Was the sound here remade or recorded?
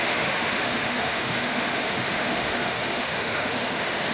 remade